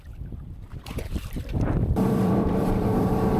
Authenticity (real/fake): fake